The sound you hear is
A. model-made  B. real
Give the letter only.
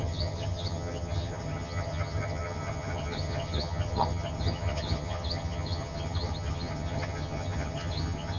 A